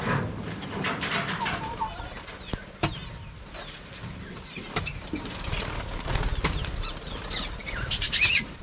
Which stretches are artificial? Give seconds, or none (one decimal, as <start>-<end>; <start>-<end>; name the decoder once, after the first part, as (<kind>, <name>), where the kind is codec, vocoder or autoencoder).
3.0-4.0 (vocoder, BigVGAN v2); 4.9-5.6; 7.6-8.6